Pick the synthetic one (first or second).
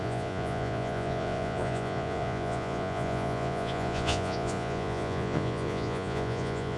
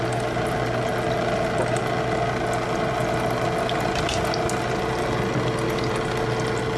first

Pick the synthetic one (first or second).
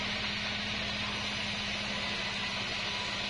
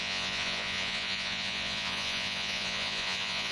second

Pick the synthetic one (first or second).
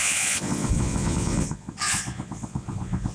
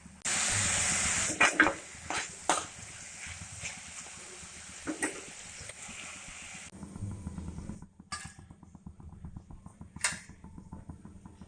first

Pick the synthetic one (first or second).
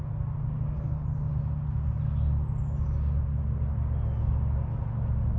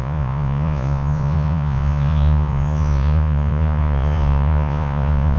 second